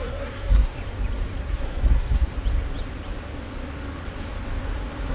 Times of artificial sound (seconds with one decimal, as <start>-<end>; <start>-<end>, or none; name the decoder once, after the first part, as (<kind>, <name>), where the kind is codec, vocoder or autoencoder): 0.0-0.8 (codec, SNAC); 1.4-2.3

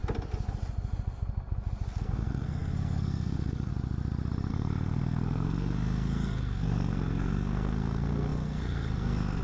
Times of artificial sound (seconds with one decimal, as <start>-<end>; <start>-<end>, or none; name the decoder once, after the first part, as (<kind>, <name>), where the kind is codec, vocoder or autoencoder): 2.0-3.7 (codec, SNAC); 4.5-9.4

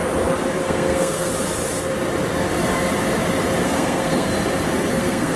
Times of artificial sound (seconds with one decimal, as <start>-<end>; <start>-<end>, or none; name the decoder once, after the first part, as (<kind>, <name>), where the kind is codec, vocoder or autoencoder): 0.6-1.3 (codec, SNAC); 3.6-4.3; 4.9-5.4

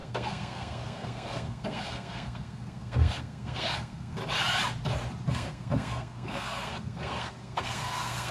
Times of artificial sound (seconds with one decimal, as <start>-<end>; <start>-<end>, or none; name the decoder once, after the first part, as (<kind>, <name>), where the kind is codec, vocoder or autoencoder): 0.0-4.2 (codec, SNAC); 5.3-8.3

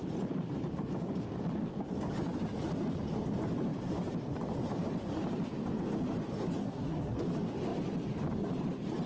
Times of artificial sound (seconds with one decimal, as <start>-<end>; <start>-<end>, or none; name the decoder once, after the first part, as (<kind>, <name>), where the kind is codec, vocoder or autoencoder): 6.6-7.2 (codec, SNAC)